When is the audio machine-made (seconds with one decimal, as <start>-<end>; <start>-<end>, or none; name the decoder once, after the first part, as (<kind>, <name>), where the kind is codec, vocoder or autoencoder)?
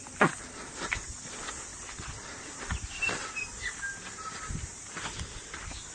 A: none